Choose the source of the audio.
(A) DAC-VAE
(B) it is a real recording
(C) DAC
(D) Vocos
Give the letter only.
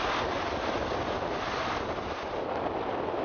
B